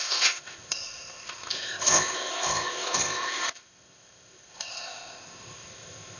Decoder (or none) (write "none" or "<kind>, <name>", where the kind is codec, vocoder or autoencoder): codec, ZipCodec